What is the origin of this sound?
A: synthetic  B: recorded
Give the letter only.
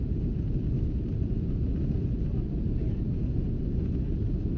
B